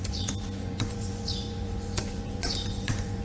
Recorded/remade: remade